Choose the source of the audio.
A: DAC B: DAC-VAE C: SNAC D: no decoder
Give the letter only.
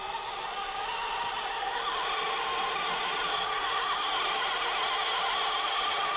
D